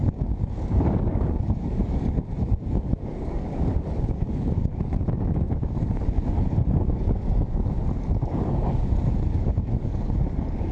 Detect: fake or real fake